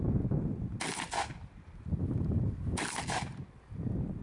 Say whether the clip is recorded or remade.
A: recorded